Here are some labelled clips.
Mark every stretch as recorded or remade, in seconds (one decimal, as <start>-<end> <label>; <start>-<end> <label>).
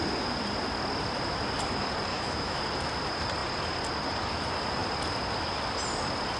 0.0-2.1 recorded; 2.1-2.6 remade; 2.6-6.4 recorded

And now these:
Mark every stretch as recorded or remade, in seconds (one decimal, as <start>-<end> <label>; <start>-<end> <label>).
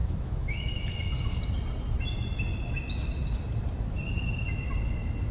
0.0-1.4 remade; 1.4-5.3 recorded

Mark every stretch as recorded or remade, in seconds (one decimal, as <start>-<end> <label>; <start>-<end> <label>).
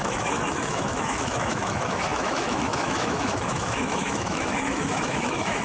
0.0-5.6 remade